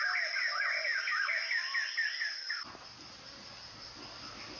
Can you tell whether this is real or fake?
real